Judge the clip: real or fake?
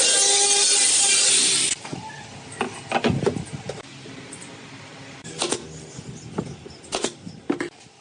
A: real